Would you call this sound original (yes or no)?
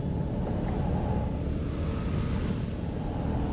yes